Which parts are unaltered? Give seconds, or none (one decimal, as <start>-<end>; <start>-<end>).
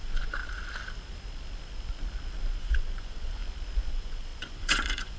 0.4-2.6; 3.4-3.9